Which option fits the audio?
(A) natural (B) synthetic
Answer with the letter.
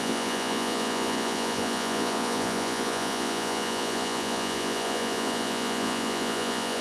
B